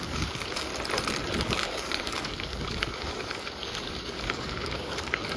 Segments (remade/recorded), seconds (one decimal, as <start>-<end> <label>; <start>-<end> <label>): 0.0-0.7 remade; 0.7-1.4 recorded; 1.4-5.4 remade